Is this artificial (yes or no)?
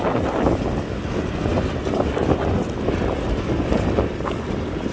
no